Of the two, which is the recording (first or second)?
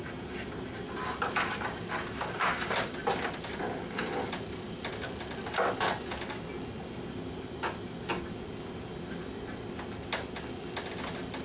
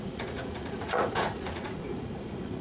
first